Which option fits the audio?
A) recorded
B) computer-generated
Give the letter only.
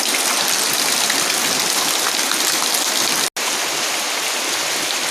A